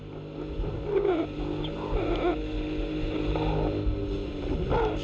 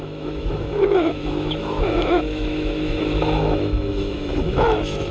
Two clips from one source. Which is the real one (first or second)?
first